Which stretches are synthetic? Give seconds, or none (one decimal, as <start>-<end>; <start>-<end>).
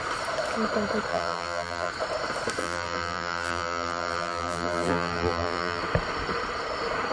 1.1-1.9; 2.6-5.8